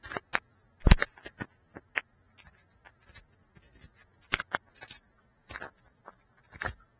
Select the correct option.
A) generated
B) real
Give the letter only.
B